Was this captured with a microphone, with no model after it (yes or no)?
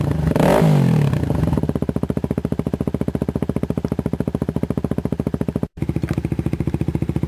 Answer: no